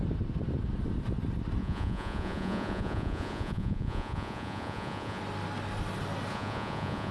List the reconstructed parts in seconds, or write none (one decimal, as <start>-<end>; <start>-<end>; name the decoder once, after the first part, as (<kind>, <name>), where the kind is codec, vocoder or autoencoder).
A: 1.6-5.2 (vocoder, Vocos); 6.3-7.1